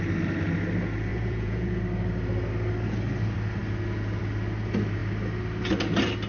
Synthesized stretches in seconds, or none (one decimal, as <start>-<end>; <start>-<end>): 1.1-1.8